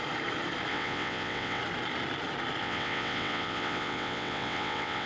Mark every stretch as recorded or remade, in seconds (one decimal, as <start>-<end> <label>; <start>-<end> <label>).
0.0-0.7 recorded; 0.7-1.6 remade; 1.6-2.6 recorded; 2.6-5.1 remade